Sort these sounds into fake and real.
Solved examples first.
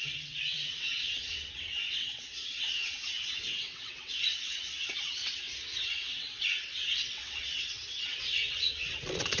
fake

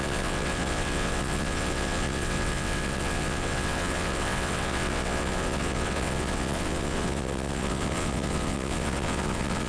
fake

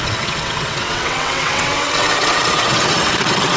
fake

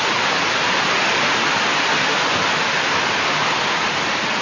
real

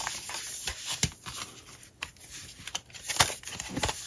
real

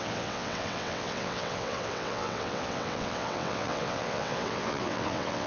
fake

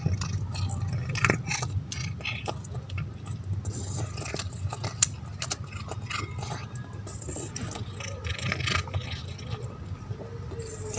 real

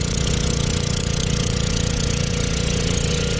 fake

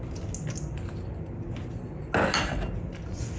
real